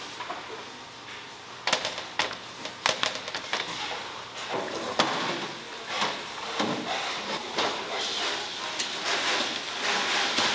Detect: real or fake real